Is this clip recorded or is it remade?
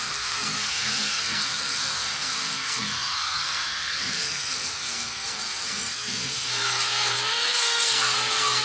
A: remade